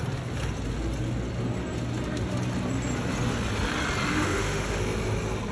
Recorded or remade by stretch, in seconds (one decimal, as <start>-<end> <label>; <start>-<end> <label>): 0.0-4.1 recorded; 4.1-4.8 remade; 4.8-5.5 recorded